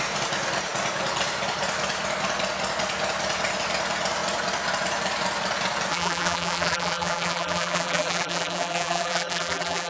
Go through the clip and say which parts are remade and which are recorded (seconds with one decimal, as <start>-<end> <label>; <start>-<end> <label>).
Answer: 0.0-5.9 recorded; 5.9-9.9 remade